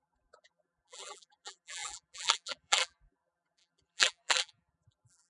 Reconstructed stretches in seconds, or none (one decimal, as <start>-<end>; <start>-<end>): 0.0-5.3